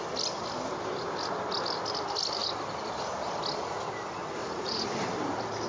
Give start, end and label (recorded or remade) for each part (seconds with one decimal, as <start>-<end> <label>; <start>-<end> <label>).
0.0-4.4 recorded; 4.4-4.9 remade; 4.9-5.7 recorded